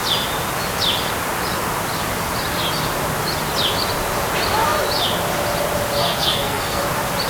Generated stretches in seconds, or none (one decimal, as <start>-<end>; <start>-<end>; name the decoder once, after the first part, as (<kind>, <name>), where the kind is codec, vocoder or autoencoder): 6.0-6.8 (codec, SNAC)